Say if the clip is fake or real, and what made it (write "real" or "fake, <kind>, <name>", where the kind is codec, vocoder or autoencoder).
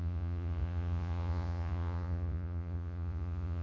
fake, vocoder, Vocos